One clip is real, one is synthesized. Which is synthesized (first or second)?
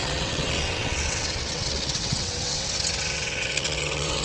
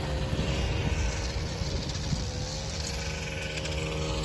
first